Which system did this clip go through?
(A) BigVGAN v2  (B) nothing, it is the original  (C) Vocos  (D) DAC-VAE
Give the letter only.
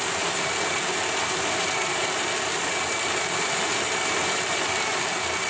B